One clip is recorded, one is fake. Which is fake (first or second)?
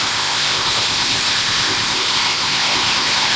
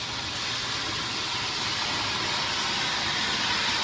first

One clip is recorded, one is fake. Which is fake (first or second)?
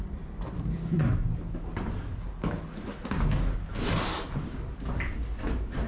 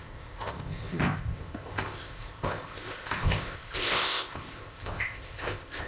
second